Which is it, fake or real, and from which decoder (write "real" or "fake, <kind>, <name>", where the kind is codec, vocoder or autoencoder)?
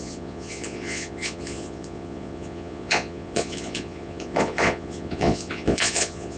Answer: fake, vocoder, Vocos